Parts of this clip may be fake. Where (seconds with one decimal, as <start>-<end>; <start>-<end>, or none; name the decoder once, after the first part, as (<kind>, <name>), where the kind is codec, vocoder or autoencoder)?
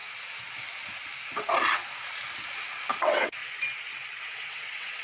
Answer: 3.0-3.4 (vocoder, WaveNeXt); 4.2-5.0